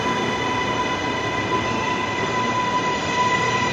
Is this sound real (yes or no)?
yes